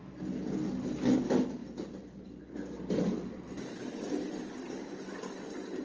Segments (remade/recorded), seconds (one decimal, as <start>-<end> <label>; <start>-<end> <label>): 0.0-5.8 recorded